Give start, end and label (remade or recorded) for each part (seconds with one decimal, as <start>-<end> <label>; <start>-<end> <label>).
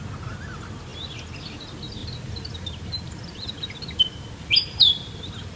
0.0-0.9 recorded; 0.9-1.4 remade; 1.4-2.0 recorded; 2.0-5.6 remade